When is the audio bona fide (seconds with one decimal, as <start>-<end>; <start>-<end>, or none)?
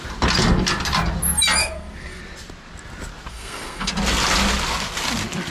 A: 0.0-1.6; 2.2-3.3; 3.9-5.5